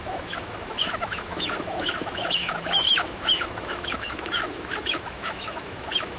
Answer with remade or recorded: remade